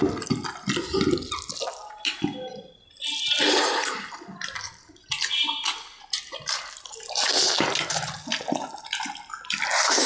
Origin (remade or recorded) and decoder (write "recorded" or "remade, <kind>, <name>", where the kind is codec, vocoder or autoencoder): recorded